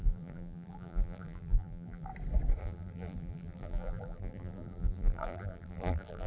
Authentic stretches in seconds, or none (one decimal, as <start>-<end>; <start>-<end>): 2.1-2.6